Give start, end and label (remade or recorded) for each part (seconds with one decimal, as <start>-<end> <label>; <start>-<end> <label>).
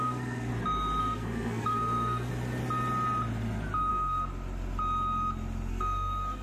0.0-0.5 remade; 0.5-1.0 recorded; 1.0-2.3 remade; 2.3-3.9 recorded; 3.9-4.3 remade; 4.3-5.7 recorded; 5.7-6.4 remade